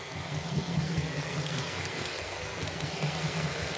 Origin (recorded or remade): remade